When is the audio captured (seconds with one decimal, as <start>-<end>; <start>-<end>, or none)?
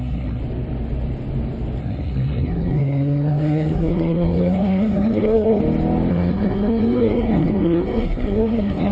0.4-1.8; 5.6-6.1